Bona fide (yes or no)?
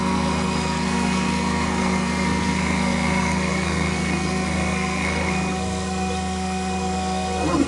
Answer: no